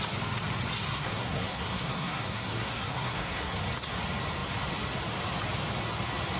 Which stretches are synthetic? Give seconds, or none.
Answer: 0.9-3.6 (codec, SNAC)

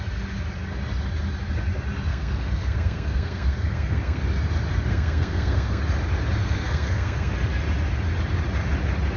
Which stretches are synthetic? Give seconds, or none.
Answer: 2.1-4.2 (codec, SNAC); 4.9-5.8; 6.4-7.3